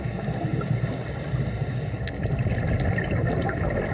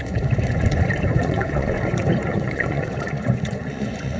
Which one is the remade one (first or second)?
second